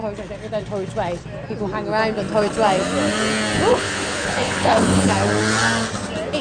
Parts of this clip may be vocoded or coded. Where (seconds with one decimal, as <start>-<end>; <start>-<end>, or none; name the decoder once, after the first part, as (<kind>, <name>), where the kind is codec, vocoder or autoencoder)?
3.7-5.1 (codec, HILCodec)